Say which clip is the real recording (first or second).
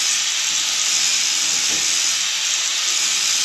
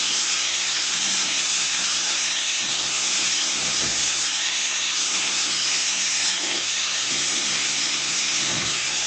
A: first